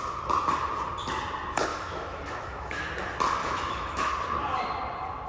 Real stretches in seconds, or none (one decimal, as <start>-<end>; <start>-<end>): 0.0-1.7; 2.8-3.4; 4.1-5.3